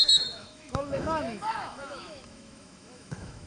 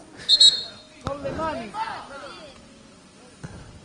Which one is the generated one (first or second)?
first